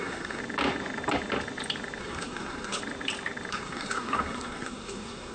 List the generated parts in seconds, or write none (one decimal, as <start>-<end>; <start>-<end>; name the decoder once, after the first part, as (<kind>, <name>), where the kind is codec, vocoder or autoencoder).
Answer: 0.0-0.4 (codec, SNAC); 2.0-2.8; 3.5-5.3